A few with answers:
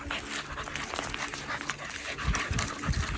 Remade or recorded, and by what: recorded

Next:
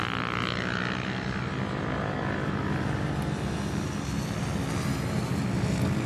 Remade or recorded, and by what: recorded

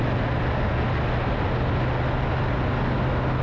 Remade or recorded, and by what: recorded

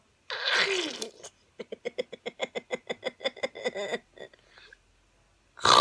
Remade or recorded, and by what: recorded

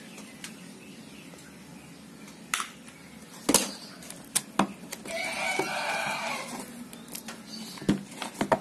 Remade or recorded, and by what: recorded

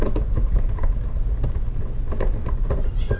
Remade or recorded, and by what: recorded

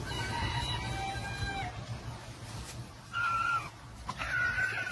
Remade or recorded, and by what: recorded